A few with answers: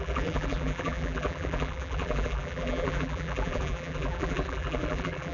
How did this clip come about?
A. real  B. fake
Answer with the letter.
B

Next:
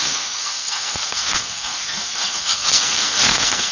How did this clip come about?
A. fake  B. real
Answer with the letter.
A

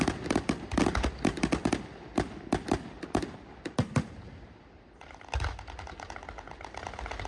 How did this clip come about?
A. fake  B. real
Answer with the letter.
B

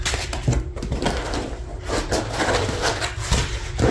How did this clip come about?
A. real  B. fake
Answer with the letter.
B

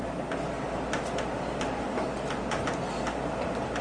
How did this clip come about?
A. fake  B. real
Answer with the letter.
B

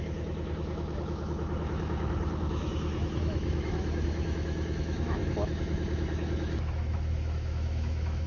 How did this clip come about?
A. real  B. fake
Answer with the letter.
B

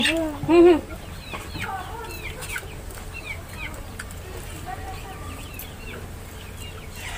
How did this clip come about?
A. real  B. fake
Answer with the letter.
A